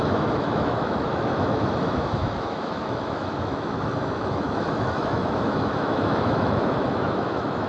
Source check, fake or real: fake